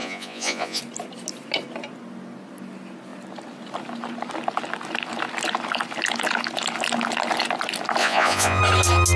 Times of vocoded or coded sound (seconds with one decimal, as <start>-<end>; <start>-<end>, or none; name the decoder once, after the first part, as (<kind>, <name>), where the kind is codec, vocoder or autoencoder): 0.0-0.8 (vocoder, Vocos); 8.0-8.6